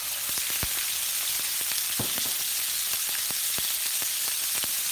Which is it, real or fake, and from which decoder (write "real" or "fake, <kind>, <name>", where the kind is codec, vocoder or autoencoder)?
real